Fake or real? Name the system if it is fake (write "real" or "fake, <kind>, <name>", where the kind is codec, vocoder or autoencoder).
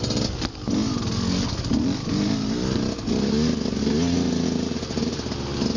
real